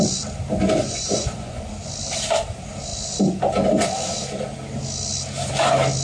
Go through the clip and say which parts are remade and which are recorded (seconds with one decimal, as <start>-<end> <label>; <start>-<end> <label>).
0.0-0.8 recorded; 0.8-1.7 remade; 1.7-6.0 recorded